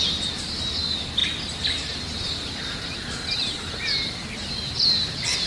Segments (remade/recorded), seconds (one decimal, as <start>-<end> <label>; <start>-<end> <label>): 0.0-5.5 recorded

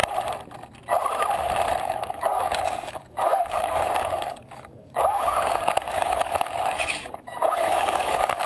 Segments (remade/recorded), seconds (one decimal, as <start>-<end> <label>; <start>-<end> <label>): 0.0-1.8 recorded; 1.8-8.5 remade

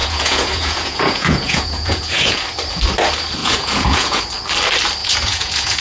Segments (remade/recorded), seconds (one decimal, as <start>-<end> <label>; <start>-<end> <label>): 0.0-2.4 remade; 2.4-3.4 recorded; 3.4-4.2 remade; 4.2-5.0 recorded; 5.0-5.8 remade

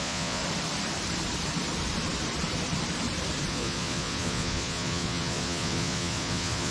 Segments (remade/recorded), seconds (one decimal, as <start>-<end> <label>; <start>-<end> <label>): 0.0-0.4 remade; 0.4-3.5 recorded; 3.5-6.7 remade

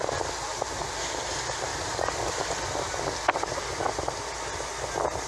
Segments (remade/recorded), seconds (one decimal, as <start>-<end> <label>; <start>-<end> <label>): 0.0-5.3 recorded

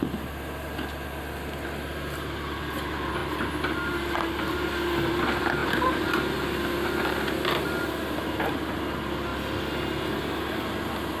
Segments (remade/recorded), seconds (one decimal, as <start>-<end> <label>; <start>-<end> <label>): 0.0-11.2 recorded

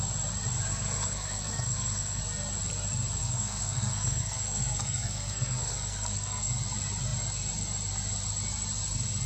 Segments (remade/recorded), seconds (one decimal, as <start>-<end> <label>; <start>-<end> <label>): 0.0-0.7 recorded; 0.7-2.2 remade; 2.2-3.2 recorded; 3.2-6.5 remade; 6.5-9.3 recorded

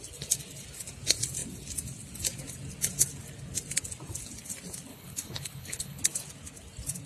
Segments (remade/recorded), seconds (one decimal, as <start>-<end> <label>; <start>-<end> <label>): 0.0-4.9 recorded; 4.9-6.0 remade; 6.0-7.1 recorded